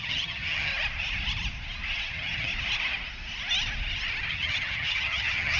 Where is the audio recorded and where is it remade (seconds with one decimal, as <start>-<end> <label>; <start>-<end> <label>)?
0.0-0.7 remade; 0.7-2.1 recorded; 2.1-2.5 remade; 2.5-4.3 recorded; 4.3-5.6 remade